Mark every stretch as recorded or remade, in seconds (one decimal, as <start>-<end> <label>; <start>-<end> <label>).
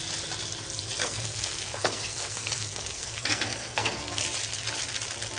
0.0-1.0 recorded; 1.0-4.2 remade; 4.2-5.4 recorded